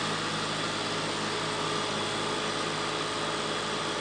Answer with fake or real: real